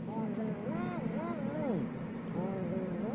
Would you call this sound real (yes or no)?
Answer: yes